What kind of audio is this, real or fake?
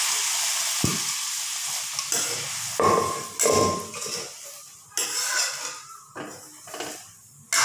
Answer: real